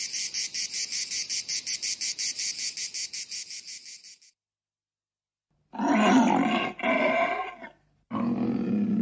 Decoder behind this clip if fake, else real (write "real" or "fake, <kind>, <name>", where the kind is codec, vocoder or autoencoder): real